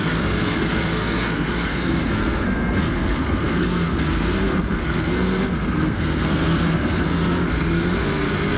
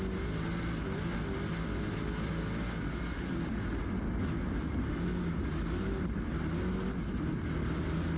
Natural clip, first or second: second